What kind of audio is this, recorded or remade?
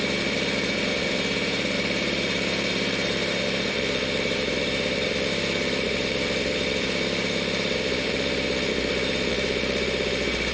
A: remade